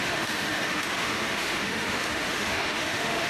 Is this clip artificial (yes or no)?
yes